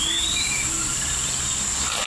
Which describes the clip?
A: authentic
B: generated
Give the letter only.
A